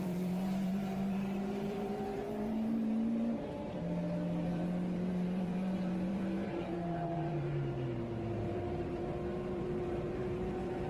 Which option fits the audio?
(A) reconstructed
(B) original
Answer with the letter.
A